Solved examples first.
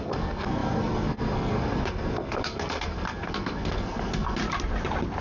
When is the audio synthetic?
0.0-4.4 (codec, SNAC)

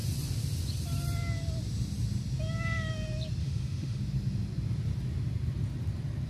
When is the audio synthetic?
3.4-4.0 (autoencoder, DAC-VAE)